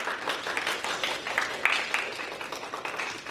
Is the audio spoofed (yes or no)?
no